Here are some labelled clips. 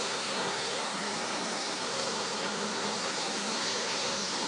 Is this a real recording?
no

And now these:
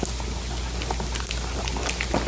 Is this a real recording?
yes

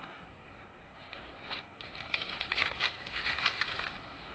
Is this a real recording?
no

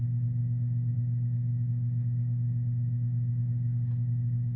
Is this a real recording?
no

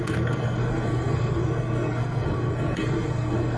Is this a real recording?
no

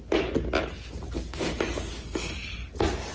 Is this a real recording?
yes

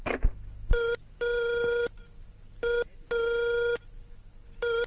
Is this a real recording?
yes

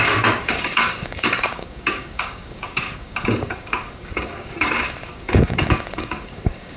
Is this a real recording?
no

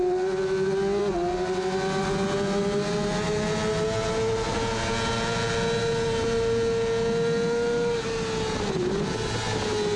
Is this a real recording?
yes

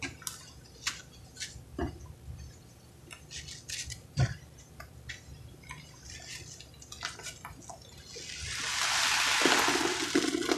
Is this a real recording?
yes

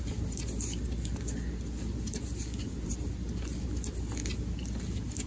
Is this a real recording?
yes